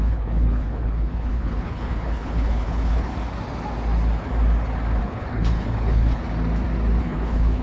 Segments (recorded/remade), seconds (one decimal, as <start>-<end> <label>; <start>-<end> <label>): 0.0-3.1 remade; 3.1-5.0 recorded; 5.0-6.2 remade; 6.2-7.0 recorded; 7.0-7.6 remade